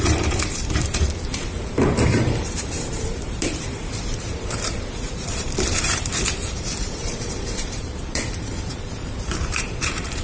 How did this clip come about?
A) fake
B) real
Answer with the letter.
A